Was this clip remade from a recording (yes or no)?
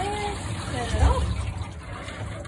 no